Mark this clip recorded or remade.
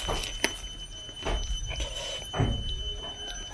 recorded